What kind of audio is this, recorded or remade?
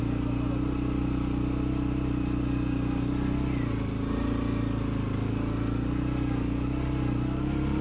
recorded